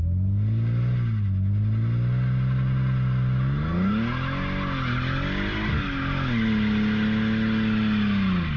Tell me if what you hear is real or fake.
real